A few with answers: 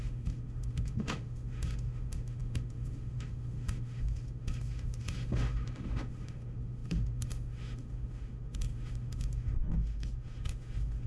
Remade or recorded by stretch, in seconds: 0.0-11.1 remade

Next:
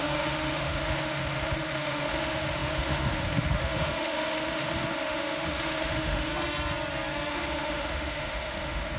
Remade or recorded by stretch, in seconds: 0.0-6.3 remade; 6.3-7.3 recorded; 7.3-9.0 remade

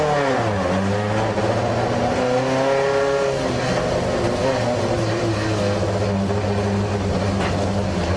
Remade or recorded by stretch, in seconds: 0.0-8.2 recorded